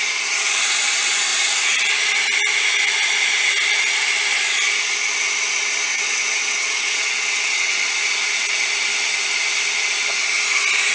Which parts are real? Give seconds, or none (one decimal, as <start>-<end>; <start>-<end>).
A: 0.0-5.9; 7.7-10.9